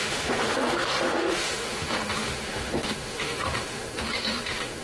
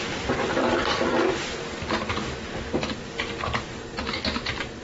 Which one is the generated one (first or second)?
first